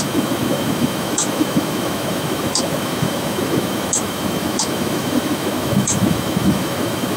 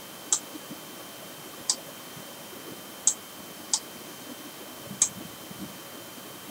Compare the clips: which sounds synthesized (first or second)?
first